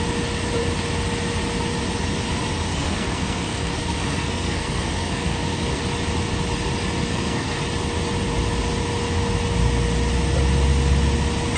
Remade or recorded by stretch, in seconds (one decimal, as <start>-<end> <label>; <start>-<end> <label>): 0.0-2.7 recorded; 2.7-5.8 remade; 5.8-7.0 recorded; 7.0-7.6 remade; 7.6-11.6 recorded